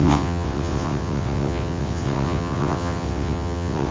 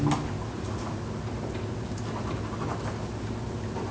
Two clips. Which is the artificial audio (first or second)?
first